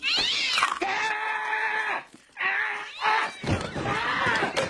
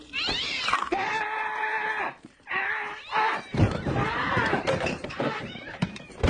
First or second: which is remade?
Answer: second